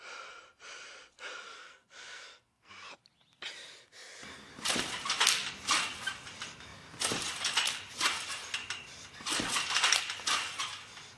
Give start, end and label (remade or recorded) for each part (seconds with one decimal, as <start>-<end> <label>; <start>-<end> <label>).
0.0-1.5 recorded; 1.5-2.7 remade; 2.7-11.2 recorded